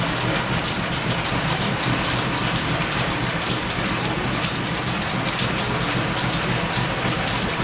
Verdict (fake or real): real